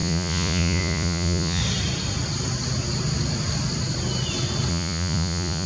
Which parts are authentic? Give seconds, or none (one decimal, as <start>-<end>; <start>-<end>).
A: 1.6-4.7